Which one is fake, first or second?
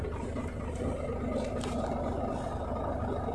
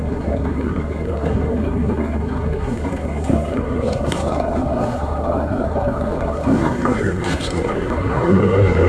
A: second